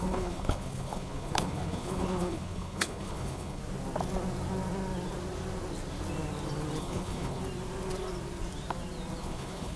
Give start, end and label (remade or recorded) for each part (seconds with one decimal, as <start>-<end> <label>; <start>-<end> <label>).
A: 0.0-3.6 remade; 3.6-6.8 recorded; 6.8-7.4 remade; 7.4-9.2 recorded; 9.2-9.8 remade